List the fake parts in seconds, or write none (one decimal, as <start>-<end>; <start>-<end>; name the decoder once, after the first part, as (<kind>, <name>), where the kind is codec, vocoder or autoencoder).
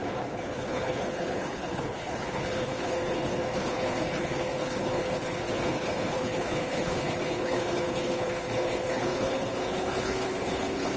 0.0-11.0 (codec, HILCodec)